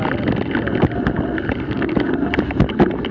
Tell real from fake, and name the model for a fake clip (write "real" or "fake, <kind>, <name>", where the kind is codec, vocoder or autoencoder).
real